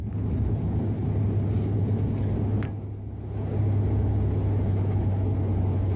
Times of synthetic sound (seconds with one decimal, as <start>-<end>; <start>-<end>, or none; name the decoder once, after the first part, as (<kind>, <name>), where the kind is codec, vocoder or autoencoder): none